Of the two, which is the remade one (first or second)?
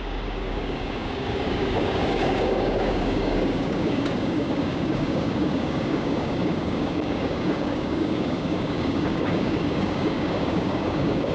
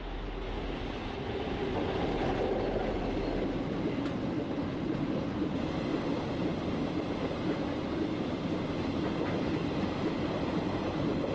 first